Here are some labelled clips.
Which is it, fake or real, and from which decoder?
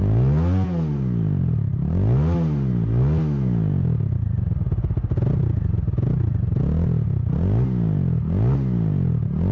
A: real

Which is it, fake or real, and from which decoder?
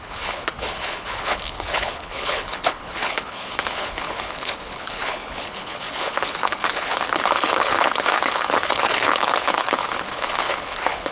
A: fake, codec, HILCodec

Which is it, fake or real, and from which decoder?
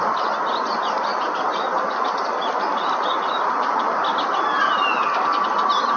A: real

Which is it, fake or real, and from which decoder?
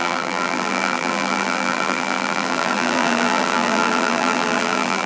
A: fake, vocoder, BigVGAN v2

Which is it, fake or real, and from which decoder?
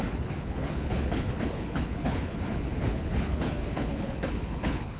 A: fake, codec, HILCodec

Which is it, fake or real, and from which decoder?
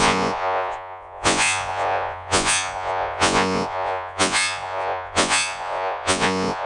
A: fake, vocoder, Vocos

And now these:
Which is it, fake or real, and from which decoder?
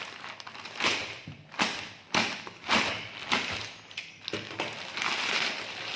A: real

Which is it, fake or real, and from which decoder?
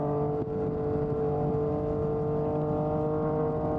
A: real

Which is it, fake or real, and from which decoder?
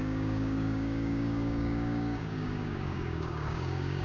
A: fake, codec, DAC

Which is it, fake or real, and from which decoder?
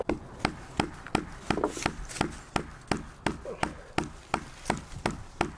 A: real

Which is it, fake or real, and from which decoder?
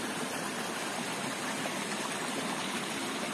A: real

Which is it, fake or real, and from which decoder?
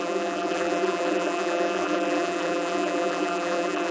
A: fake, vocoder, BigVGAN v2